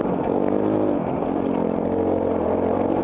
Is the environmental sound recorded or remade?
recorded